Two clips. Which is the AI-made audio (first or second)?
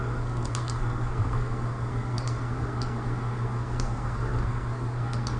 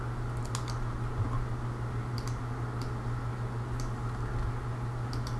first